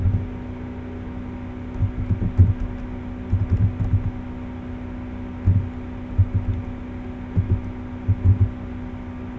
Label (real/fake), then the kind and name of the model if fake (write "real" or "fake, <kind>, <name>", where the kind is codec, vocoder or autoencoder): real